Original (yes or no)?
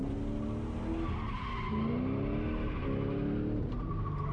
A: yes